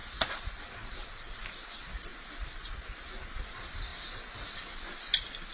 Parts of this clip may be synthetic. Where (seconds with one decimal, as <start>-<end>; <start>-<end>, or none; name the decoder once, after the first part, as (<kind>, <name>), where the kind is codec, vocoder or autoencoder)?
none